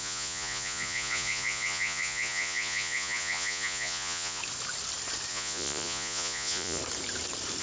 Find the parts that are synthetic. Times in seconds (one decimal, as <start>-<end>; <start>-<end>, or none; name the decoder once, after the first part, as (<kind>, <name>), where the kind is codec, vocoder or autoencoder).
0.0-4.4 (vocoder, Vocos); 5.3-6.8